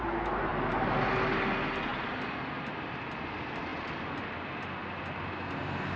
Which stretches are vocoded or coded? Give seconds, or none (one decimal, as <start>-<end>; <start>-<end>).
none

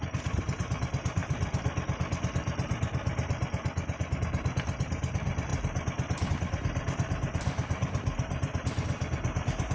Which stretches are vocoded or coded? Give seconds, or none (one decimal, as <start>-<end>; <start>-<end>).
0.0-1.2; 4.2-5.5; 6.3-9.7

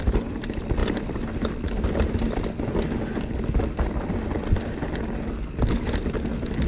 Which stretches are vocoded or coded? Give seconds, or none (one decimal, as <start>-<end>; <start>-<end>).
none

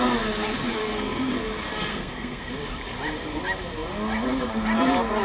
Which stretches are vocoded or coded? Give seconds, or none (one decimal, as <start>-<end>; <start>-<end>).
0.8-1.3; 1.9-2.5

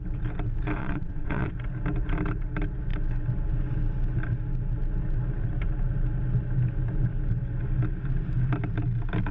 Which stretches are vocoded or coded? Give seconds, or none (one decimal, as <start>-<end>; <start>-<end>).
0.8-1.5

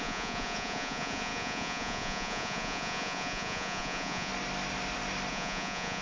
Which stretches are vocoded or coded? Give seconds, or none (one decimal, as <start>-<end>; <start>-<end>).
0.0-4.3; 5.3-6.0

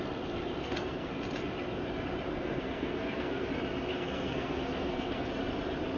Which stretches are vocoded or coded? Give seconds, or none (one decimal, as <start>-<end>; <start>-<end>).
0.6-1.1; 2.3-3.5; 3.9-5.3

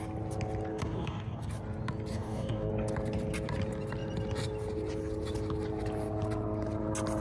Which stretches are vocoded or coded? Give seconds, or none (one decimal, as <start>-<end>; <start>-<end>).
0.7-1.5; 2.1-2.7